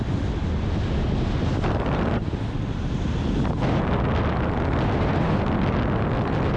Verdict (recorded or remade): recorded